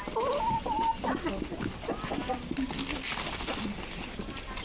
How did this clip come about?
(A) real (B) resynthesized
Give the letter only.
A